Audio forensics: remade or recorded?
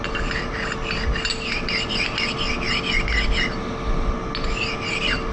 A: recorded